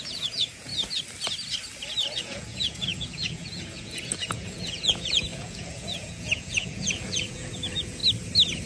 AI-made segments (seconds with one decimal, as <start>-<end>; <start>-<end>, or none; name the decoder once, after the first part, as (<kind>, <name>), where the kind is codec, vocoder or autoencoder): 0.0-0.7 (vocoder, Vocos); 2.0-8.0